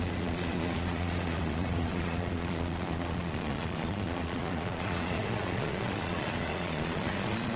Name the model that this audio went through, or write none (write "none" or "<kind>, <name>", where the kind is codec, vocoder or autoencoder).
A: vocoder, Vocos